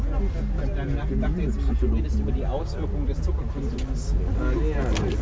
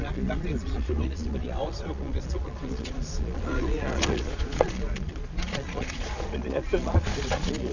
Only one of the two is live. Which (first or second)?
first